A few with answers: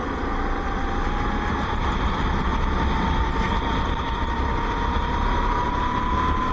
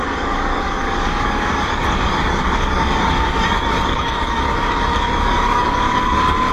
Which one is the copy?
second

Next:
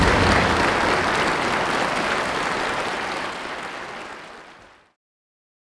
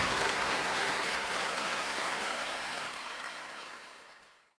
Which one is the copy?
second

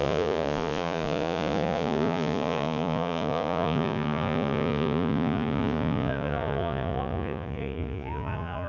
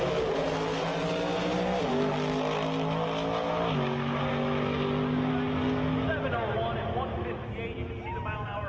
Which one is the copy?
first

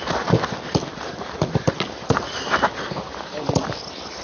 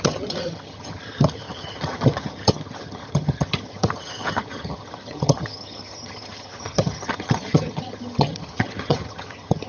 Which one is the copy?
second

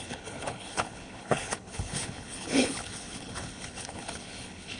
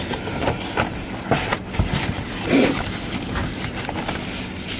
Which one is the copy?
first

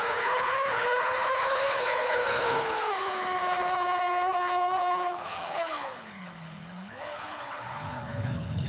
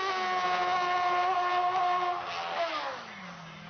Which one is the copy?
first